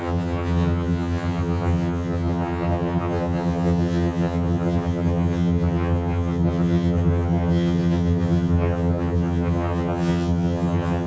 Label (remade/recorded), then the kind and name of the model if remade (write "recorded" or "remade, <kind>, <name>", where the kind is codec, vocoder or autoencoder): remade, vocoder, HiFi-GAN